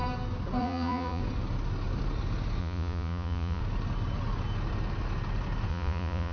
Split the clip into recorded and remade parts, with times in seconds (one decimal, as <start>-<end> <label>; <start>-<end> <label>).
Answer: 0.0-0.6 recorded; 0.6-1.2 remade; 1.2-2.6 recorded; 2.6-3.6 remade; 3.6-5.7 recorded; 5.7-6.3 remade